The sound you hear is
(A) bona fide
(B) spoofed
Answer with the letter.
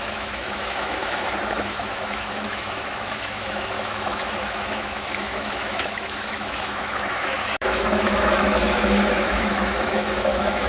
B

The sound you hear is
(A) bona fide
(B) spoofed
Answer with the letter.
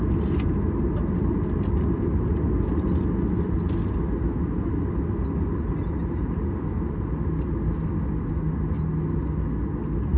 A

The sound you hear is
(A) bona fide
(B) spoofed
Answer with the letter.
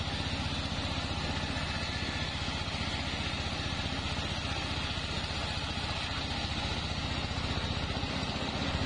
A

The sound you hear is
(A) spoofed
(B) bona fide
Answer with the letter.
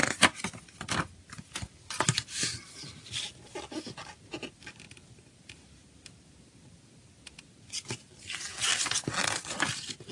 B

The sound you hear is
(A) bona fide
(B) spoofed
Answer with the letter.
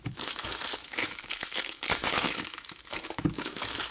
B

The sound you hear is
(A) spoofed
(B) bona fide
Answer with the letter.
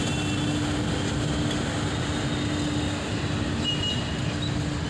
B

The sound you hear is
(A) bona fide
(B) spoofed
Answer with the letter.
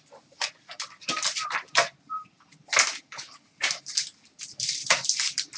B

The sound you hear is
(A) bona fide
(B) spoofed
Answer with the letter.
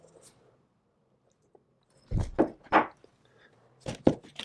A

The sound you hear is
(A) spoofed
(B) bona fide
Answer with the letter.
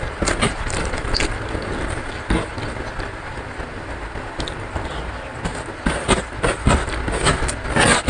B